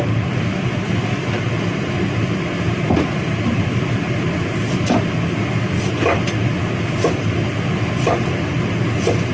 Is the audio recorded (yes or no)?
yes